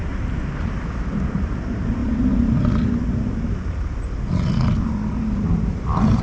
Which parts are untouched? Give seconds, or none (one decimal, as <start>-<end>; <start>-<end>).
2.0-4.9